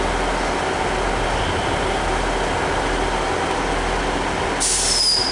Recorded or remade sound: recorded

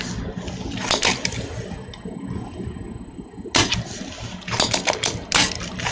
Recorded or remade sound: recorded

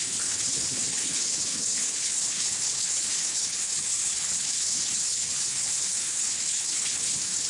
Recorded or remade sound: remade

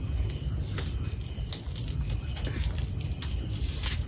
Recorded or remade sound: recorded